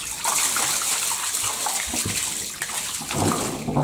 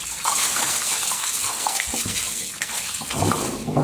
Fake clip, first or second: second